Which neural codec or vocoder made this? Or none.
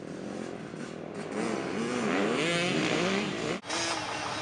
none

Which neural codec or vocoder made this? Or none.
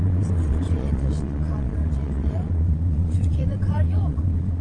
vocoder, Vocos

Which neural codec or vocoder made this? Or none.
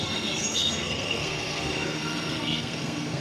codec, SNAC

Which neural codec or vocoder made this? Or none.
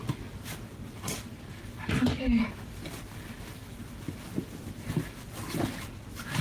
none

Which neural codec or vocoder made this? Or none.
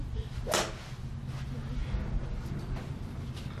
none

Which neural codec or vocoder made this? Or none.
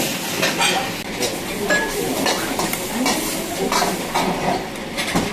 none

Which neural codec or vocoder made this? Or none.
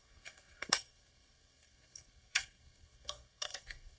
codec, SNAC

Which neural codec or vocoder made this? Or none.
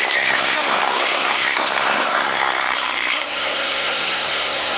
codec, SNAC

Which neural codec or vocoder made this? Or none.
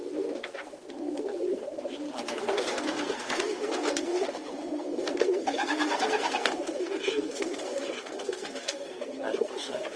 codec, SNAC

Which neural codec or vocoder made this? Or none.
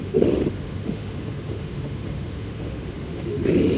autoencoder, DAC-VAE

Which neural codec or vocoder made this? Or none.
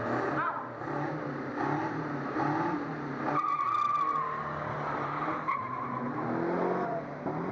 none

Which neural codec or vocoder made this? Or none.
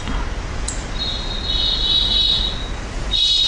none